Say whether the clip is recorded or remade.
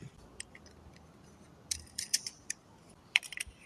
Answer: remade